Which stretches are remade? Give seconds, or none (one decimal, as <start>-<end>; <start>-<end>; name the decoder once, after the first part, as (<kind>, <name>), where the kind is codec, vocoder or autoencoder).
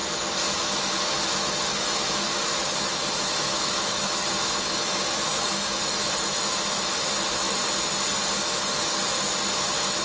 0.5-7.6 (autoencoder, DAC-VAE); 8.4-8.9